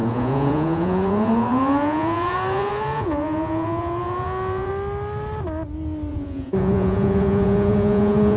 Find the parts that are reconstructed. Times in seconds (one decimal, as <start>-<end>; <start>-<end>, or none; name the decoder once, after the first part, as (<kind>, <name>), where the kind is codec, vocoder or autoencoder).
0.0-4.7 (vocoder, Vocos); 6.1-8.4